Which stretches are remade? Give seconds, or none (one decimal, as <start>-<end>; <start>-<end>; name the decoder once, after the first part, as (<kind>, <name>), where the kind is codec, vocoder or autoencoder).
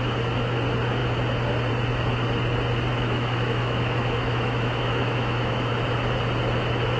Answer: 2.9-5.7 (autoencoder, DAC-VAE)